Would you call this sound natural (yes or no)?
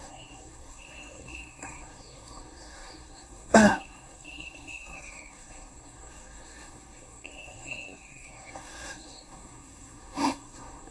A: no